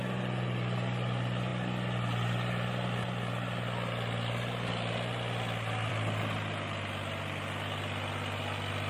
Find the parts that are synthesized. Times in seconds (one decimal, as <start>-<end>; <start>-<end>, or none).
none

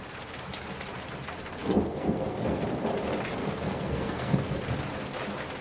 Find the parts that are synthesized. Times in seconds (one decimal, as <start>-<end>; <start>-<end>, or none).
1.6-2.6; 3.4-4.5